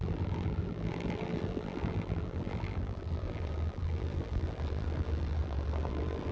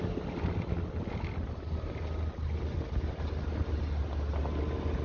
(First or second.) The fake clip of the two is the first